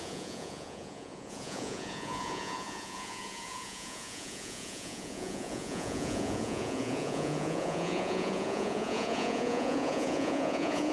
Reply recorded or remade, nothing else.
remade